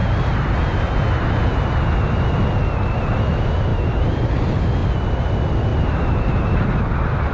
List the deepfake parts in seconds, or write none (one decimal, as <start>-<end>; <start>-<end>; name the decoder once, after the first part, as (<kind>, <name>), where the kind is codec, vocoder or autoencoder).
0.0-0.8 (vocoder, BigVGAN v2); 3.7-4.3; 5.7-6.7